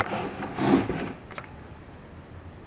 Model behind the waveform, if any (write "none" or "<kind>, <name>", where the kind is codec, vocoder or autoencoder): none